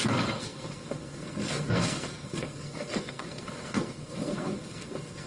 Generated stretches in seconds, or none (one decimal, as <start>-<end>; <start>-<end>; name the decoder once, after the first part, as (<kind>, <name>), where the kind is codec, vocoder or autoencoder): 0.0-5.3 (codec, SNAC)